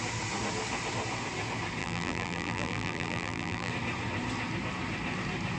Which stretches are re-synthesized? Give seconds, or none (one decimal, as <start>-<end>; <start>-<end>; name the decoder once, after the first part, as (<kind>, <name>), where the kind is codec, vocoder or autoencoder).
1.8-3.7 (vocoder, BigVGAN v2)